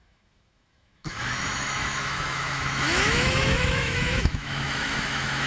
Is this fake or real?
fake